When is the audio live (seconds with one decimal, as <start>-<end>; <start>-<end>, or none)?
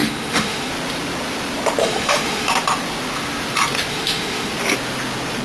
0.7-1.8; 2.5-3.9; 4.5-5.4